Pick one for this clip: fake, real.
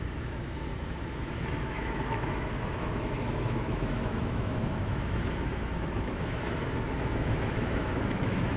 fake